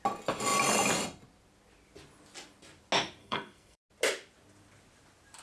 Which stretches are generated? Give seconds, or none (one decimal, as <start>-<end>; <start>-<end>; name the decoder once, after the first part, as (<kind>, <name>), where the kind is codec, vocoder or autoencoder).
3.2-3.8 (codec, SNAC)